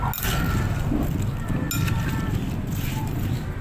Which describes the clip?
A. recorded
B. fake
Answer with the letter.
A